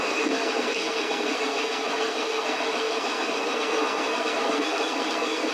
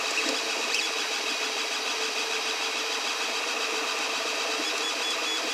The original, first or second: second